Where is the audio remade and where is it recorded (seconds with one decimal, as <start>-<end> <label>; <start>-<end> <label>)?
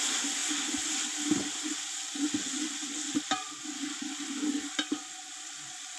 0.0-6.0 recorded